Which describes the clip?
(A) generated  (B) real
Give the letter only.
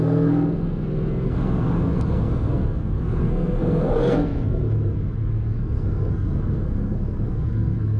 A